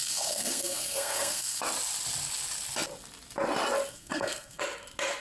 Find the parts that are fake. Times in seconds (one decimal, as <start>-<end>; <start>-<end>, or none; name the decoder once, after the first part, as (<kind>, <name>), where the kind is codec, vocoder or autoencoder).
0.0-1.6 (codec, SNAC); 3.9-4.6